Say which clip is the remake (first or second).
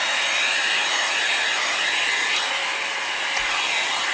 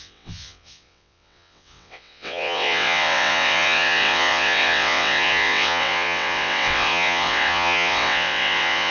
second